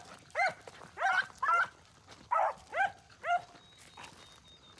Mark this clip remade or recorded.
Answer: recorded